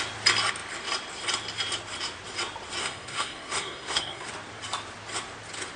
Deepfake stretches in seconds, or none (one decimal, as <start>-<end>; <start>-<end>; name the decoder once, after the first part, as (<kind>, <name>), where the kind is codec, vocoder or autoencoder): 2.8-4.3 (codec, SNAC)